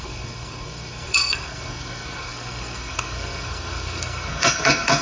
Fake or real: fake